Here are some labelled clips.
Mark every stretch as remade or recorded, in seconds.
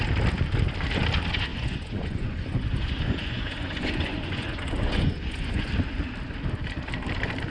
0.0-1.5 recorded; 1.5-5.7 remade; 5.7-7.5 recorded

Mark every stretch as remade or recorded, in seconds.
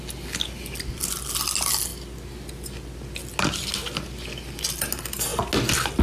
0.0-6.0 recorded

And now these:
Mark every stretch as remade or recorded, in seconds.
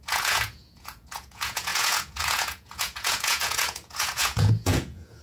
0.0-5.2 remade